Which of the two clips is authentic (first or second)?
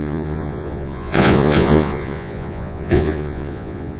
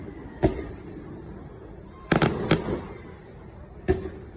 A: second